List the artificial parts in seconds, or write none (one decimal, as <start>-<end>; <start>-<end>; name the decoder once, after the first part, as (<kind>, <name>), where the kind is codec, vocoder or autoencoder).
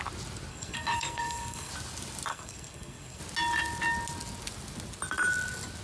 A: 0.5-1.7 (codec, SNAC); 2.3-3.2